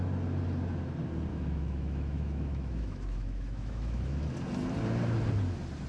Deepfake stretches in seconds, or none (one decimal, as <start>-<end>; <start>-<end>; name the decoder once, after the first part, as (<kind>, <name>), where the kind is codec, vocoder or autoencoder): 1.3-4.3 (autoencoder, DAC-VAE)